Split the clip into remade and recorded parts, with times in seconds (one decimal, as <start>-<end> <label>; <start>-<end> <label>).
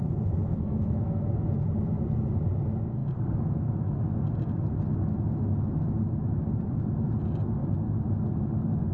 0.0-0.5 recorded; 0.5-1.3 remade; 1.3-8.9 recorded